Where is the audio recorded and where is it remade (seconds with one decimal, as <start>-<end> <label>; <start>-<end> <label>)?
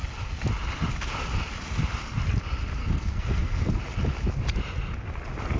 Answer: 0.0-2.8 recorded; 2.8-3.8 remade; 3.8-5.6 recorded